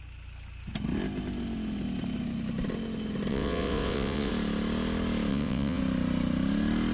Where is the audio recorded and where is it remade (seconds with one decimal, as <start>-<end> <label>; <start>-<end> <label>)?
0.0-3.3 recorded; 3.3-4.3 remade; 4.3-5.3 recorded; 5.3-5.8 remade; 5.8-6.9 recorded